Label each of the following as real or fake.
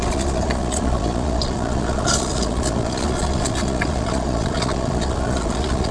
fake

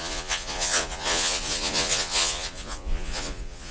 fake